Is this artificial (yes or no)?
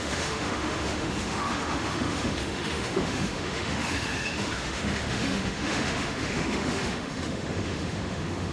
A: yes